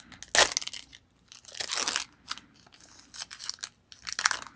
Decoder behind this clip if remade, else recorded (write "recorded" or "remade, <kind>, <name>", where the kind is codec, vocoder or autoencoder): recorded